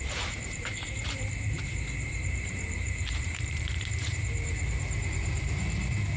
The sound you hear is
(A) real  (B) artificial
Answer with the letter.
B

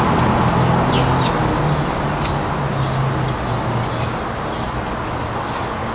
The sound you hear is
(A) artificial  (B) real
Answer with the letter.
B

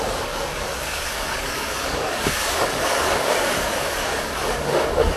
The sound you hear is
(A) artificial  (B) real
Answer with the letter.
A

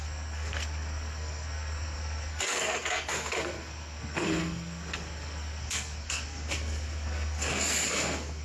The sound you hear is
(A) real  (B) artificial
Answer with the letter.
B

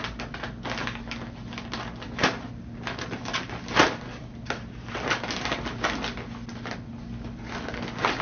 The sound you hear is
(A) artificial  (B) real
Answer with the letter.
B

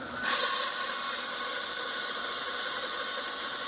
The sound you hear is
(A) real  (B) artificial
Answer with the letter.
A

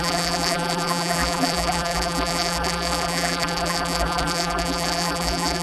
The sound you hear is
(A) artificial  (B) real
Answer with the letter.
A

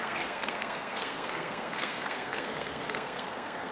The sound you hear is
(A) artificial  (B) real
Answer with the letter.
A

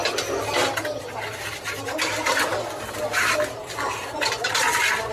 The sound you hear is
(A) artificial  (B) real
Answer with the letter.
B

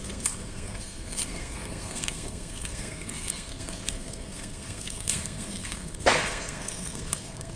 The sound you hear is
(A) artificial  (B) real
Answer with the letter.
A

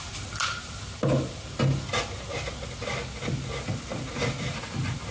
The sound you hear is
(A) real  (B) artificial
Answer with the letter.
A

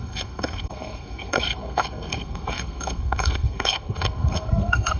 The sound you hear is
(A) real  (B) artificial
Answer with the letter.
B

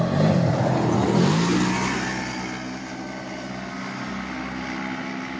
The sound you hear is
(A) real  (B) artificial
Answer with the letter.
A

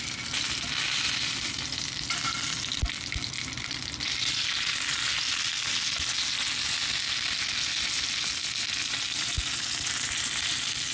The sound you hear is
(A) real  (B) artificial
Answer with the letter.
A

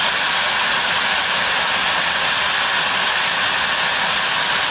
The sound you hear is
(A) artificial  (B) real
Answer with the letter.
B